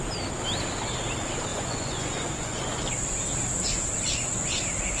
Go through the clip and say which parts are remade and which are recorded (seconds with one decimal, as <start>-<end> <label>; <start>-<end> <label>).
0.0-1.5 recorded; 1.5-2.8 remade; 2.8-4.1 recorded; 4.1-4.6 remade; 4.6-5.0 recorded

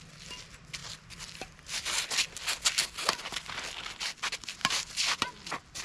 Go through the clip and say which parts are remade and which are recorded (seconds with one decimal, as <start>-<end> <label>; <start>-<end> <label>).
0.0-5.8 recorded

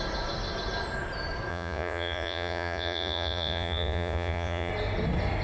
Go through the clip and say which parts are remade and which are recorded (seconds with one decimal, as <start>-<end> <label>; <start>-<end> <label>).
0.0-1.5 recorded; 1.5-4.7 remade; 4.7-5.4 recorded

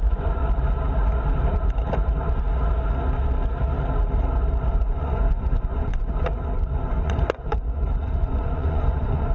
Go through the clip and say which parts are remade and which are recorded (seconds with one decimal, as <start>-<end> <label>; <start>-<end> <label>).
0.0-0.4 remade; 0.4-4.7 recorded; 4.7-9.3 remade

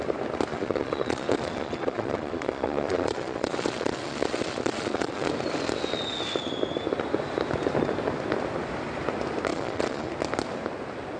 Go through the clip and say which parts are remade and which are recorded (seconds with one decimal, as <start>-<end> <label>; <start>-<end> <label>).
0.0-0.5 recorded; 0.5-5.3 remade; 5.3-9.5 recorded; 9.5-10.1 remade; 10.1-11.2 recorded